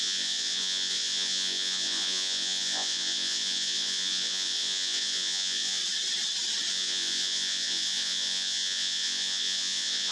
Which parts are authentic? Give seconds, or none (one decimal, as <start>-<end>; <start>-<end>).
5.8-6.7